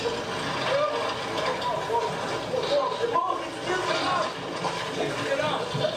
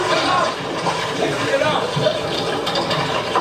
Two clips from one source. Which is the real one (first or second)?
first